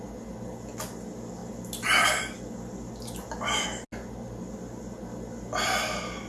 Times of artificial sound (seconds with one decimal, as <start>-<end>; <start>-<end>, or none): none